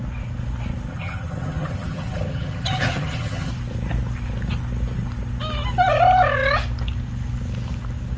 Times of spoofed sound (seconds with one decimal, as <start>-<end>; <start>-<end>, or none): 0.9-3.5